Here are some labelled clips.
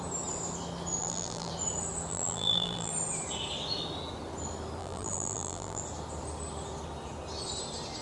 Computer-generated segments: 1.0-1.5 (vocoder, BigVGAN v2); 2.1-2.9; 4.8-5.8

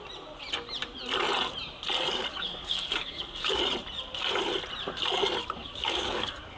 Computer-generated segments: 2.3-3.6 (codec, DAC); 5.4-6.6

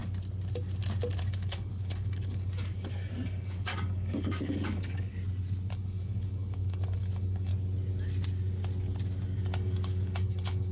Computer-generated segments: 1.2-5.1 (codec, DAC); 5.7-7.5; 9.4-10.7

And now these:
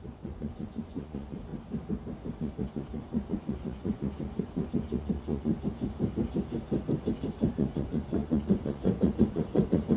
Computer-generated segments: 0.0-1.5 (vocoder, Vocos); 2.4-5.5; 7.4-10.0

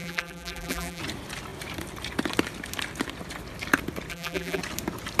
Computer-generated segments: 0.0-1.0 (vocoder, BigVGAN v2); 4.1-4.6

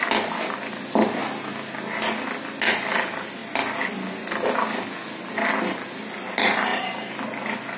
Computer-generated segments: none

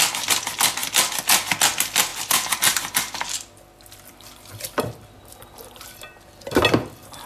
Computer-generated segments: 2.1-6.5 (vocoder, BigVGAN v2)